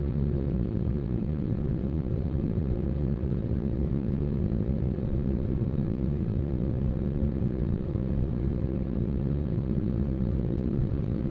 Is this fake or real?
fake